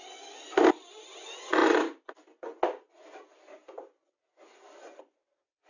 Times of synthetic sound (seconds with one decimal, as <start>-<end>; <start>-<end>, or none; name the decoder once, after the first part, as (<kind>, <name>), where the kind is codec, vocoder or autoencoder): none